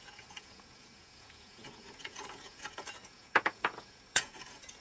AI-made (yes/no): yes